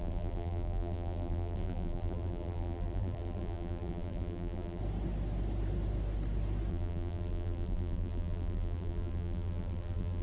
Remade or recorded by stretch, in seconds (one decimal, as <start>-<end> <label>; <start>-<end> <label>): 0.0-4.8 remade; 4.8-6.7 recorded; 6.7-10.2 remade